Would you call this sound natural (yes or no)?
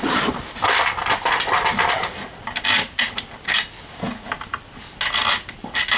yes